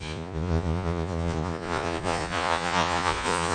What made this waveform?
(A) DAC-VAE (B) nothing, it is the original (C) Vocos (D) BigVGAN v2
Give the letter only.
C